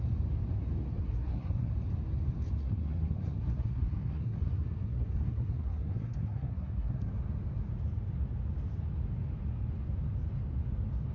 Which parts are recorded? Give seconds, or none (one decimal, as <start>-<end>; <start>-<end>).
0.0-1.0; 1.7-2.6; 7.1-11.1